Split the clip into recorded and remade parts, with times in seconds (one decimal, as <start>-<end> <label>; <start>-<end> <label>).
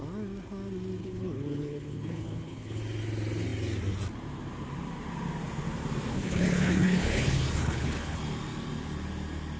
0.0-1.0 recorded; 1.0-2.8 remade; 2.8-6.1 recorded; 6.1-8.2 remade; 8.2-9.6 recorded